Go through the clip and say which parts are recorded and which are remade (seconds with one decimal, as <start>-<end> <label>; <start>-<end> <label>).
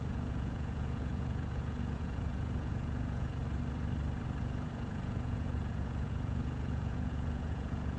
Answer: 0.0-3.4 remade; 3.4-4.4 recorded; 4.4-8.0 remade